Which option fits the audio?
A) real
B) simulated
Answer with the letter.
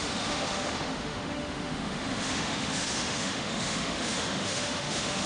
B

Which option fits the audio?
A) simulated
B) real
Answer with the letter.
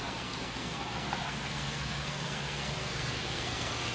A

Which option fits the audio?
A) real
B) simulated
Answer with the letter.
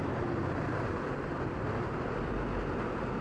A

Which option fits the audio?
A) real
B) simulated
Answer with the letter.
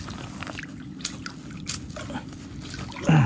A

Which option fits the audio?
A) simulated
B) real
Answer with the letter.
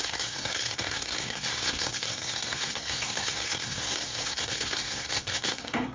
A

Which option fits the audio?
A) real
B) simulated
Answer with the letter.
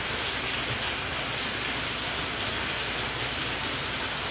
B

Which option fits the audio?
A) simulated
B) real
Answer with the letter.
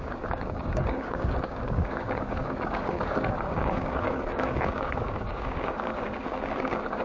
A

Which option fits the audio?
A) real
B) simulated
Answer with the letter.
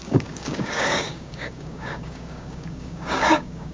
B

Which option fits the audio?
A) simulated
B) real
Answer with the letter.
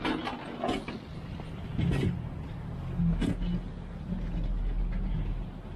B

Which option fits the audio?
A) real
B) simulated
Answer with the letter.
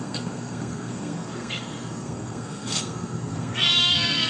B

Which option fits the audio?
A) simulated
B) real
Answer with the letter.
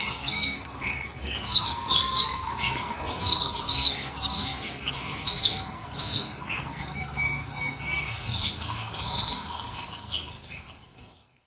A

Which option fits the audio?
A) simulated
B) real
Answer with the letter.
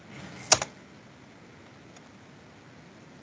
B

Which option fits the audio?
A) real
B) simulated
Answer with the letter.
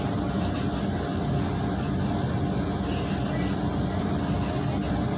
A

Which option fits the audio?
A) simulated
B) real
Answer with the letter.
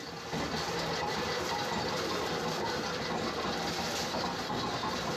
B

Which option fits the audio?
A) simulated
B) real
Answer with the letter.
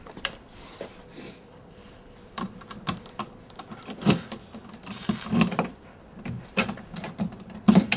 A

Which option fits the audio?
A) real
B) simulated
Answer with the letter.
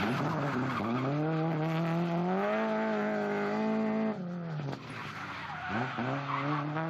A